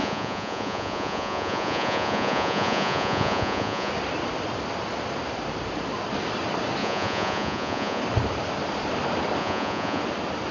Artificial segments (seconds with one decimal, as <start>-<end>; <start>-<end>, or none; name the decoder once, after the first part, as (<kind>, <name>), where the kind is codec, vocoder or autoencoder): 0.0-3.9 (vocoder, Vocos); 6.8-8.0; 9.4-10.0